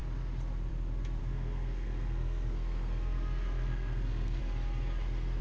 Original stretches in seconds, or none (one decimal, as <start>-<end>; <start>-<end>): 0.0-1.2; 4.4-5.4